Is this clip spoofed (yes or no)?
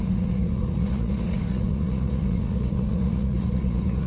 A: yes